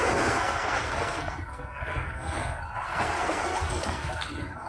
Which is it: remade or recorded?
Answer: remade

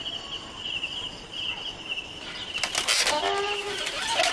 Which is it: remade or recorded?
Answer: recorded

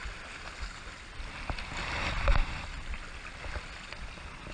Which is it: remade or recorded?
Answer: recorded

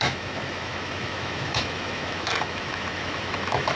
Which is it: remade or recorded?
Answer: remade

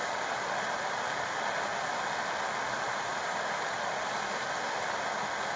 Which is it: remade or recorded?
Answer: recorded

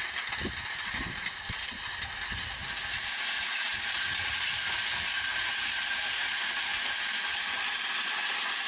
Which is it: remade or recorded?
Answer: recorded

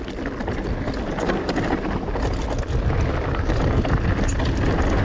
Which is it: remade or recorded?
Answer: recorded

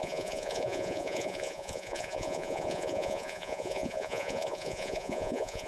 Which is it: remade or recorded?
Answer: remade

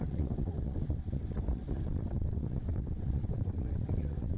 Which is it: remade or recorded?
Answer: remade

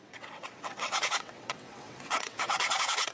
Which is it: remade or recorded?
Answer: remade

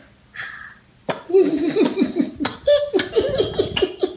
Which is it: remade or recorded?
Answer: recorded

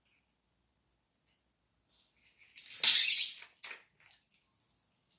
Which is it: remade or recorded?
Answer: recorded